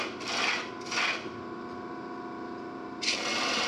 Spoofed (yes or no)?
no